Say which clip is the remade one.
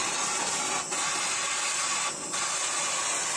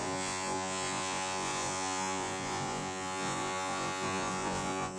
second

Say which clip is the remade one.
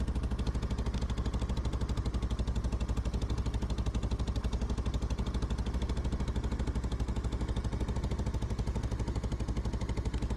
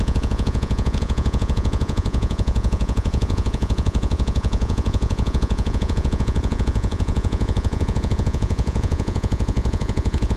second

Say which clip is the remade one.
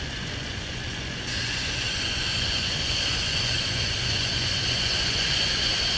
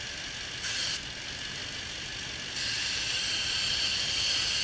first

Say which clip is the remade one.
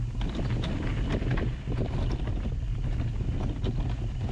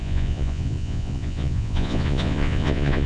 second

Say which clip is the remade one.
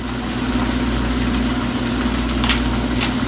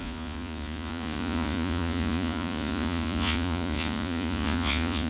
second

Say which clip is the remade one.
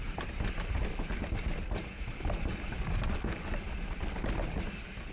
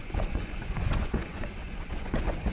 second